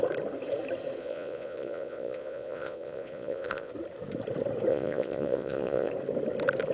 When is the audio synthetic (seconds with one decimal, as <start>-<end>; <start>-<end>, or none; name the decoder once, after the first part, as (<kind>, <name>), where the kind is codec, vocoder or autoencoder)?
1.0-3.7 (vocoder, Vocos); 4.7-5.9